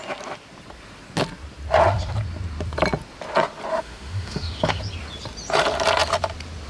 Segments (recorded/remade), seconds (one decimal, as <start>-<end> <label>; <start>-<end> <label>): 0.0-3.7 recorded; 3.7-4.8 remade; 4.8-6.7 recorded